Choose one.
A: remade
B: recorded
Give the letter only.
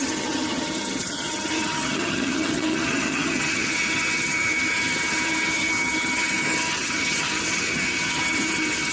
A